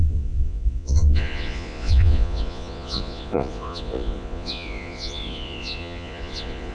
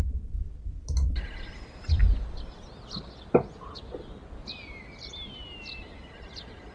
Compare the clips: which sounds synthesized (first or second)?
first